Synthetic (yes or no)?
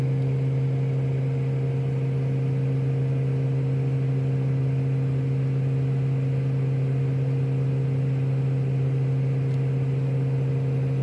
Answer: no